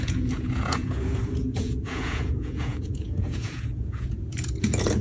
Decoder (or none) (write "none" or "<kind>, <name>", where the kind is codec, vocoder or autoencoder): vocoder, Vocos